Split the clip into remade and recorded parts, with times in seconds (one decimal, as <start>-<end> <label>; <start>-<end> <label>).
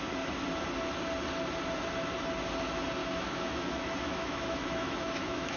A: 0.0-3.0 recorded; 3.0-5.6 remade